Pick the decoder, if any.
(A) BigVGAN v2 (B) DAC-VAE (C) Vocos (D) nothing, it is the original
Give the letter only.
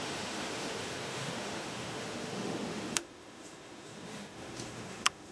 B